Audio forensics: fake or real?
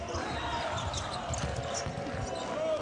real